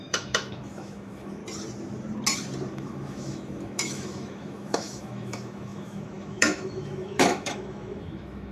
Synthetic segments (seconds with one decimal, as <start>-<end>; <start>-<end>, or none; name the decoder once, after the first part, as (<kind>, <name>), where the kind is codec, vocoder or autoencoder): 0.0-1.4 (autoencoder, DAC-VAE); 2.7-8.5